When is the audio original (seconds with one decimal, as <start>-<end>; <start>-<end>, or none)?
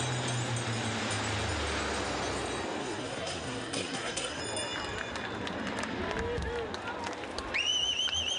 0.0-2.8; 4.4-8.4